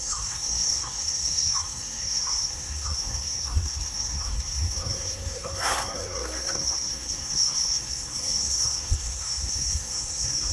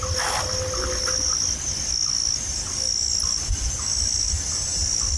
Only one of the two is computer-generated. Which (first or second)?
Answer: first